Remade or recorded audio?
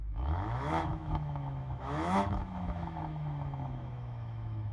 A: remade